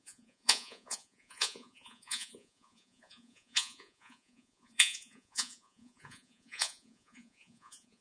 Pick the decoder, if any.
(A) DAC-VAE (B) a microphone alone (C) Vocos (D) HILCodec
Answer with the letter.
C